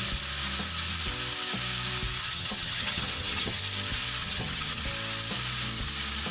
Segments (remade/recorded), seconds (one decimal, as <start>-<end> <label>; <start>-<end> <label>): 0.0-2.2 recorded; 2.2-3.6 remade; 3.6-4.2 recorded; 4.2-4.8 remade; 4.8-6.3 recorded